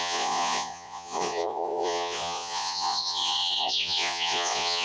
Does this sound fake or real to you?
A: fake